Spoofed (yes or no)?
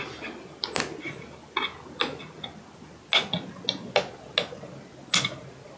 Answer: no